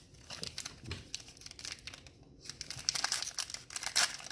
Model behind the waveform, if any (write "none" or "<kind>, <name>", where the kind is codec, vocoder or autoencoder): none